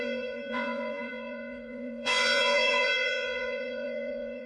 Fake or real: fake